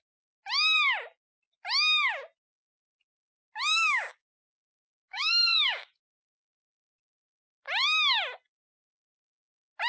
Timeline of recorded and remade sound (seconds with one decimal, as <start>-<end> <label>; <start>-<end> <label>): 0.0-3.7 recorded; 3.7-4.4 remade; 4.4-5.1 recorded; 5.1-5.9 remade; 5.9-9.9 recorded